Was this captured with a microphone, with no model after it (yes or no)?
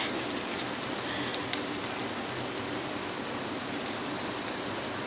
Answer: yes